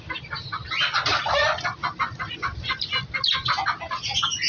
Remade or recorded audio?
recorded